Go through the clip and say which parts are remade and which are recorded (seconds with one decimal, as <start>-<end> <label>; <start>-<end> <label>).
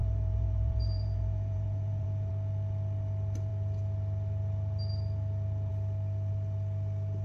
0.0-2.3 remade; 2.3-7.2 recorded